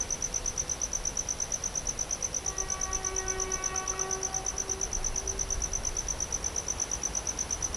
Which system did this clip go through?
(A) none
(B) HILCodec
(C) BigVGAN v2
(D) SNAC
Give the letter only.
A